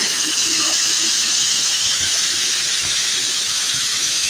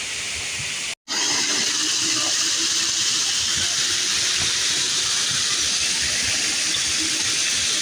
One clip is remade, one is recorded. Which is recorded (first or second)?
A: second